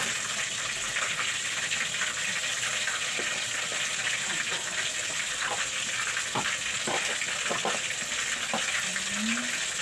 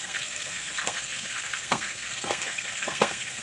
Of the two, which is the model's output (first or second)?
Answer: second